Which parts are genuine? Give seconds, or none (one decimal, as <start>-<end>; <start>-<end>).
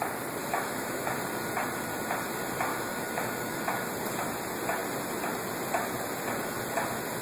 0.0-0.4; 1.2-2.7; 3.9-7.2